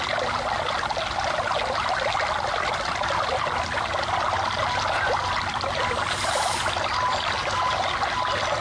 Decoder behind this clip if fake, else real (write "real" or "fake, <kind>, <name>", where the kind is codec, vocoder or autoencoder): real